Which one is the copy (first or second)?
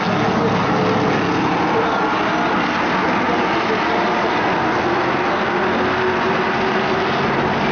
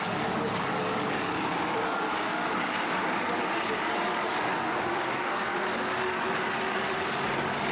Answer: second